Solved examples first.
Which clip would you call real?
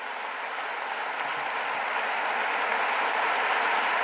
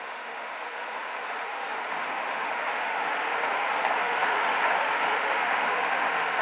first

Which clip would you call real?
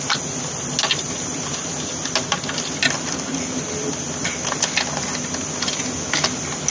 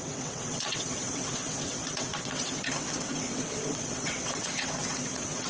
first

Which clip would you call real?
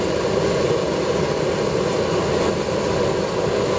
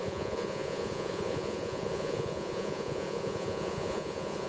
first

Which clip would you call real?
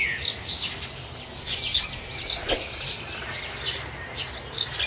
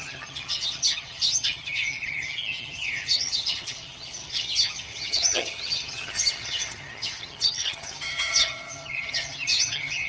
first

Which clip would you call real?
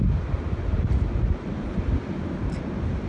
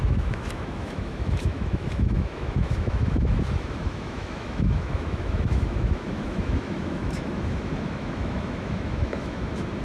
first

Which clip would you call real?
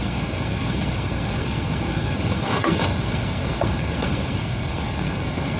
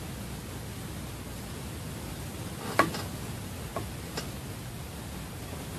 second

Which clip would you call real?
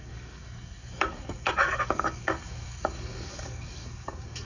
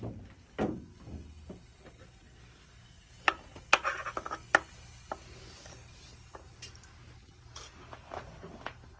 second